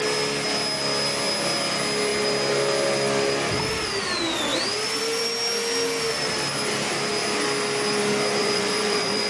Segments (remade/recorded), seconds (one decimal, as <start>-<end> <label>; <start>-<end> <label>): 0.0-8.4 recorded; 8.4-9.3 remade